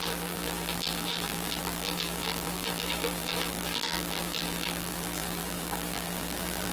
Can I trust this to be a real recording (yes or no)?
no